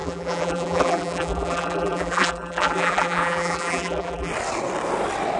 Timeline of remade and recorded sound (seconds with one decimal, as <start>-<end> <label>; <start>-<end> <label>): 0.0-4.3 remade; 4.3-5.4 recorded

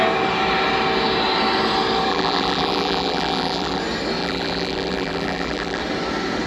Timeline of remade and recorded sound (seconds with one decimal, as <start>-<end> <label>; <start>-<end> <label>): 0.0-2.1 recorded; 2.1-3.8 remade; 3.8-4.2 recorded; 4.2-5.8 remade; 5.8-6.5 recorded